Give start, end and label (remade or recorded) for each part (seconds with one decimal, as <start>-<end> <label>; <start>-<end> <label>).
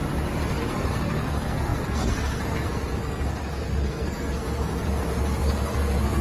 0.0-0.6 recorded; 0.6-6.2 remade